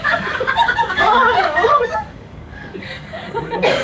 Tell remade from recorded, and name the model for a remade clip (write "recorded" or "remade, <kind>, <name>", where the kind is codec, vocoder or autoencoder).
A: remade, codec, DAC